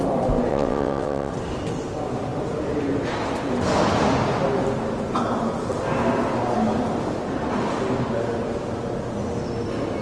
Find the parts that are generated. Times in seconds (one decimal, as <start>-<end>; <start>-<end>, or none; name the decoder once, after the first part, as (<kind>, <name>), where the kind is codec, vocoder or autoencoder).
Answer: 0.5-1.3 (vocoder, WaveNeXt)